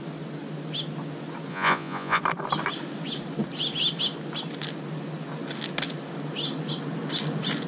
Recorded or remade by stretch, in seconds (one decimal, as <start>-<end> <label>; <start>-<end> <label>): 0.0-1.5 recorded; 1.5-2.2 remade; 2.2-7.7 recorded